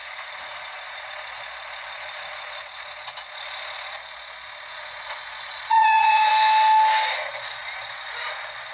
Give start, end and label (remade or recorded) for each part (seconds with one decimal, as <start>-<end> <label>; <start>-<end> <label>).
0.0-1.0 remade; 1.0-4.7 recorded; 4.7-6.3 remade; 6.3-8.7 recorded